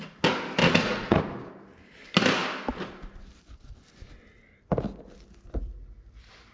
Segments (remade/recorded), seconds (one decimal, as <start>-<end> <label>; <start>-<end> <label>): 0.0-0.6 recorded; 0.6-1.2 remade; 1.2-6.5 recorded